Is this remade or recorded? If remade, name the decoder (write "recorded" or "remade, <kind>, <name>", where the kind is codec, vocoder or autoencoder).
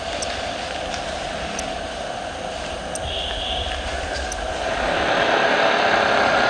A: remade, vocoder, BigVGAN v2